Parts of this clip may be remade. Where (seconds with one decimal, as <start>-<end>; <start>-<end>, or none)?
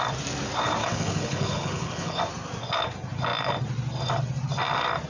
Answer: 0.8-2.2